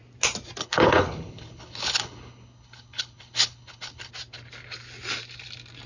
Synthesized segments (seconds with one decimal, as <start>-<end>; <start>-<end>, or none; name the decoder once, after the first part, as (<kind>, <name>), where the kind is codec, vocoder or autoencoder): 0.6-4.1 (codec, HILCodec)